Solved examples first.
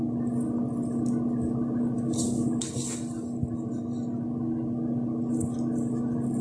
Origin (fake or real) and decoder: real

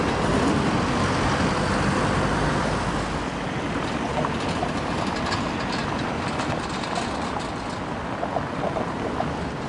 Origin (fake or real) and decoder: real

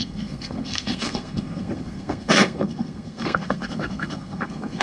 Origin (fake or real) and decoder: fake, codec, SNAC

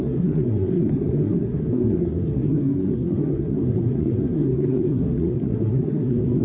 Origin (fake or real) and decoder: fake, codec, SNAC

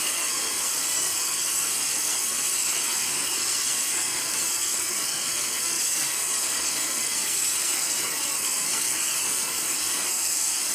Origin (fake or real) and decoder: fake, codec, SNAC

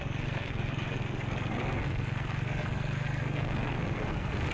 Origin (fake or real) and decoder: fake, codec, SNAC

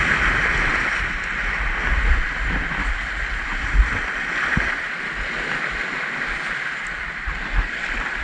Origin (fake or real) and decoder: real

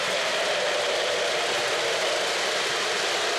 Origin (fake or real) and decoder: real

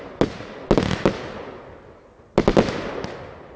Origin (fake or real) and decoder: real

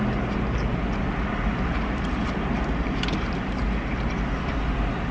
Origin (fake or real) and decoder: real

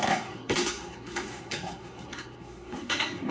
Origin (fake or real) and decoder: fake, codec, SNAC